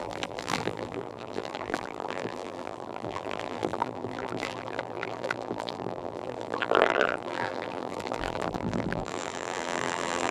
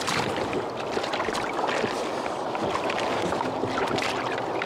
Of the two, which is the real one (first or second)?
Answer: second